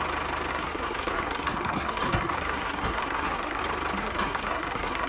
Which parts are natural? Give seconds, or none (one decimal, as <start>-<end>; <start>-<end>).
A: 0.0-0.5; 3.6-4.0